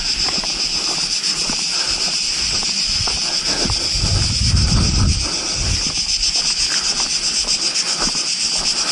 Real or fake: real